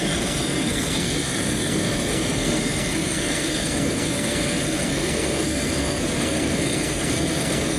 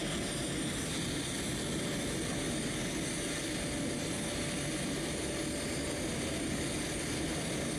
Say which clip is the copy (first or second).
first